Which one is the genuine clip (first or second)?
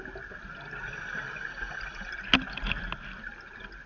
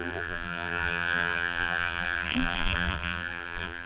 first